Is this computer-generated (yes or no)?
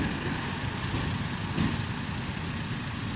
no